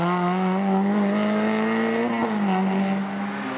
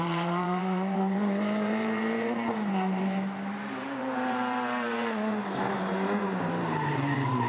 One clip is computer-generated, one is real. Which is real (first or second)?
first